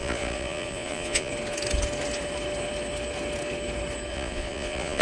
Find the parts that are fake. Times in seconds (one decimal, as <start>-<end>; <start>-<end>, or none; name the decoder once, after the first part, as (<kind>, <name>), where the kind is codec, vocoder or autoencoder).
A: 0.0-1.3 (vocoder, Vocos); 4.1-5.0